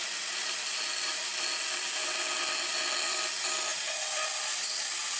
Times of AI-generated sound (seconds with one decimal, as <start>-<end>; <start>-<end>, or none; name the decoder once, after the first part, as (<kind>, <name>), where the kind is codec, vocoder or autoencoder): none